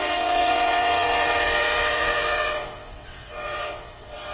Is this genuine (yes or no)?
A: no